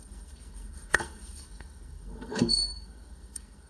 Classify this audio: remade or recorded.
remade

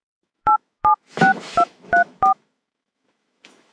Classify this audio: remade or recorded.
remade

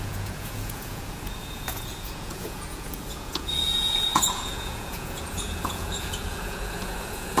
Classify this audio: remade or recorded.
remade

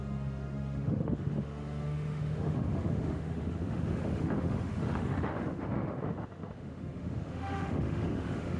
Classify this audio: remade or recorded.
remade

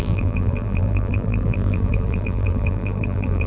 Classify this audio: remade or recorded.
remade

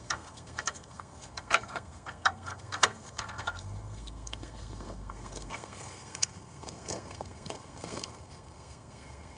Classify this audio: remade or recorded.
remade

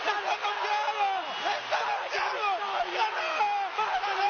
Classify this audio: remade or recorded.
recorded